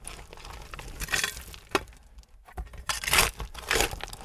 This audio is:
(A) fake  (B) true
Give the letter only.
B